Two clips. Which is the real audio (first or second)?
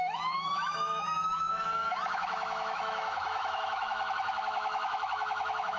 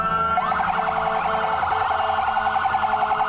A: second